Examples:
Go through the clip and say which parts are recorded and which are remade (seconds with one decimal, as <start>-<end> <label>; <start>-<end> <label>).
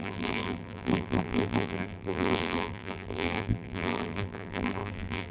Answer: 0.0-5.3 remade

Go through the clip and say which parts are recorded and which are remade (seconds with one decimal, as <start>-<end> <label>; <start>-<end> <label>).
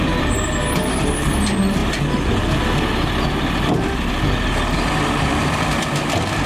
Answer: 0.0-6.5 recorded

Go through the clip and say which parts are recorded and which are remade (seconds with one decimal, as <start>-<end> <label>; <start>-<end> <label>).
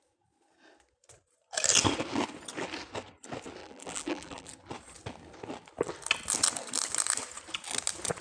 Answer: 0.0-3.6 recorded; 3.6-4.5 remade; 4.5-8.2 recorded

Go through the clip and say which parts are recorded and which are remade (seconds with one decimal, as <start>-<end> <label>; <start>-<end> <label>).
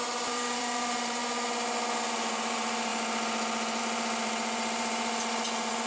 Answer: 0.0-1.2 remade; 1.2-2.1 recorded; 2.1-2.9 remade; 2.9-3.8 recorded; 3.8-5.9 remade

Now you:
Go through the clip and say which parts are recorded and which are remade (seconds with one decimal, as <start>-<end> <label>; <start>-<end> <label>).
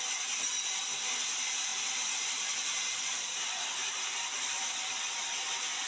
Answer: 0.0-1.7 recorded; 1.7-5.0 remade; 5.0-5.9 recorded